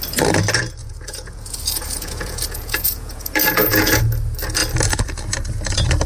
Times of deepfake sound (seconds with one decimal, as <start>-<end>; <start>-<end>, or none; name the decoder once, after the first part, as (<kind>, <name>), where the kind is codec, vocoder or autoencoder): 0.8-4.0 (vocoder, Vocos)